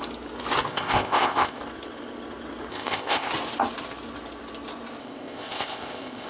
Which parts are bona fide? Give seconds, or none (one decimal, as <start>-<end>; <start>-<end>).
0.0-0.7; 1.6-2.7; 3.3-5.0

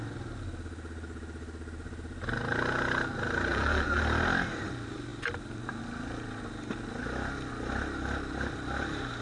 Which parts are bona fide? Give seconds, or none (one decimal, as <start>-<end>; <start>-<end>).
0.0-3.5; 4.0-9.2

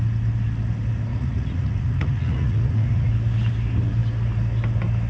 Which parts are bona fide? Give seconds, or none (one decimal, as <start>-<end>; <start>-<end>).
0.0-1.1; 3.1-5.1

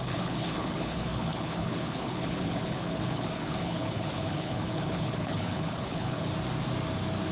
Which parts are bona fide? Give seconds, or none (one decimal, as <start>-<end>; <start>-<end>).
6.3-7.3